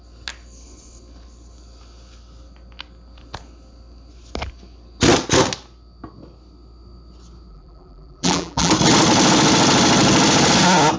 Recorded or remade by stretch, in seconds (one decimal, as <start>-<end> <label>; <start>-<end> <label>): 0.0-7.5 recorded; 7.5-8.7 remade; 8.7-11.0 recorded